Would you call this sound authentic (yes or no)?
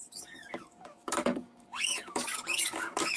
no